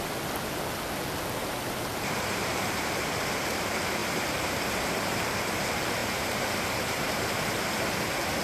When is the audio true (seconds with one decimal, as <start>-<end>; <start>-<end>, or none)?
0.0-1.4; 3.5-4.0; 5.5-6.0